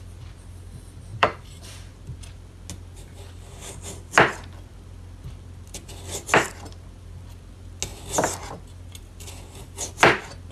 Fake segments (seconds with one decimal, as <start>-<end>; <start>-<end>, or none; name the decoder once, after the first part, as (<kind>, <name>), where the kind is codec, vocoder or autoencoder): 1.1-1.9 (vocoder, BigVGAN v2)